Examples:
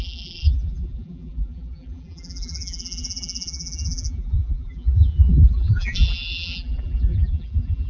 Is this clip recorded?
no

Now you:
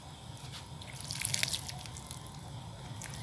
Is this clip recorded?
yes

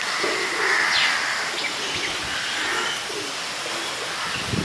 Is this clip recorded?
yes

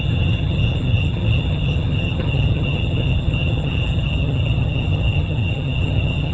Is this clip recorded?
no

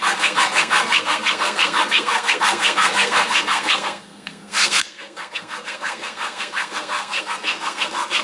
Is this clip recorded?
no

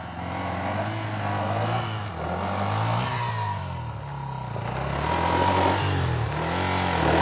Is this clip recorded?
yes